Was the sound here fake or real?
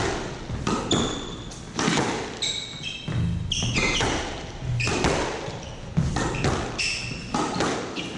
real